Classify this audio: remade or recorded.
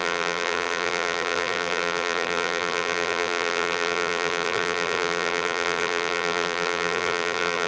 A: remade